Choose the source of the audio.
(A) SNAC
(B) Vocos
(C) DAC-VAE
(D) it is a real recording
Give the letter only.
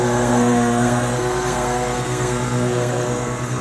A